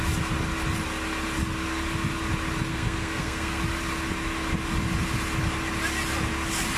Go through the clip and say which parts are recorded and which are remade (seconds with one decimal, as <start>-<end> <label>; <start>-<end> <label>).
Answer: 0.0-2.7 recorded; 2.7-3.6 remade; 3.6-6.8 recorded